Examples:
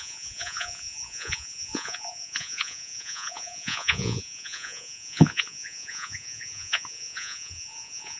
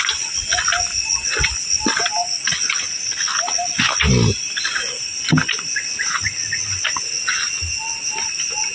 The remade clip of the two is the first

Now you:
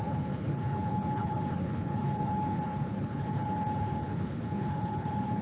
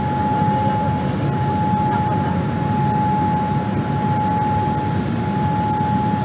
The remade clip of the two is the first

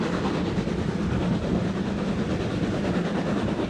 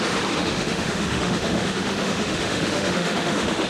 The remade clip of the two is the second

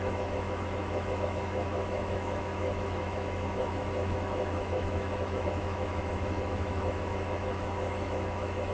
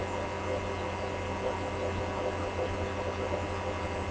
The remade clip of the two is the first